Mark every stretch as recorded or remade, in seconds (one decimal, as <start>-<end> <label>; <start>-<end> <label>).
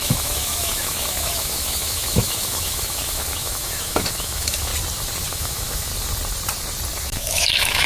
0.0-4.7 remade; 4.7-5.3 recorded; 5.3-5.9 remade; 5.9-7.0 recorded; 7.0-7.9 remade